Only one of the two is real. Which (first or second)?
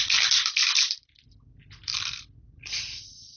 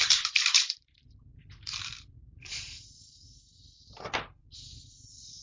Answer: first